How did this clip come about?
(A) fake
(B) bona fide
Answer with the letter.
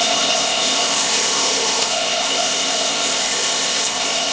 A